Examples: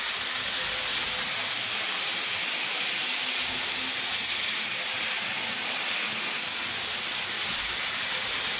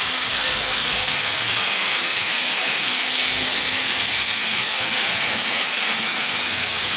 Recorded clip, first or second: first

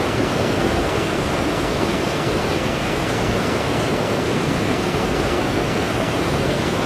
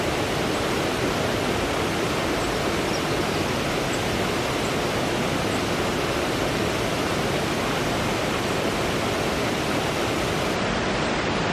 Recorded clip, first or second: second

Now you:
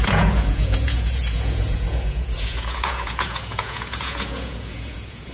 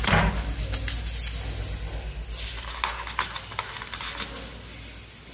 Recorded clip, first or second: second